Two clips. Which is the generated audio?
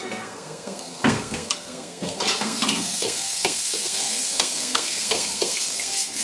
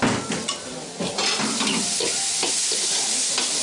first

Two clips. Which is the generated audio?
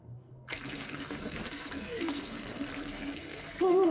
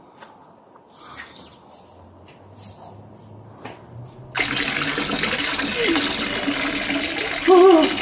first